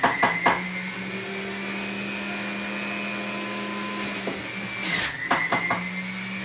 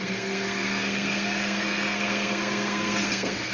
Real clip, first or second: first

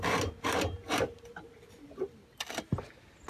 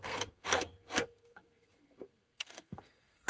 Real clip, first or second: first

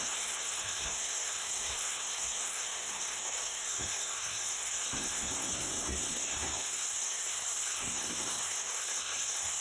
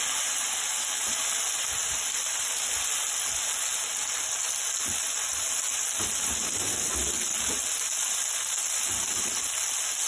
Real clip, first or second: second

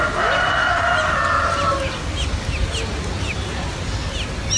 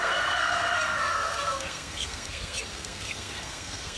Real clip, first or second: first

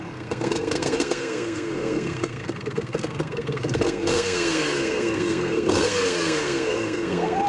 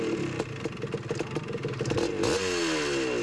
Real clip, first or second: second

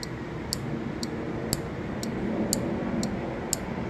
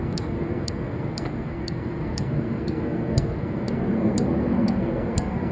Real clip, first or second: first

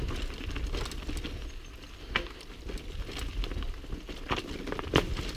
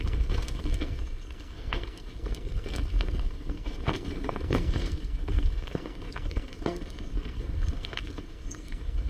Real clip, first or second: first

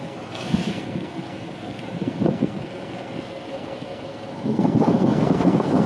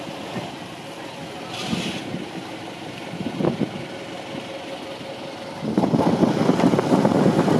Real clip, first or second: second